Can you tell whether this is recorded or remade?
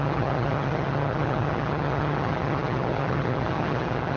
remade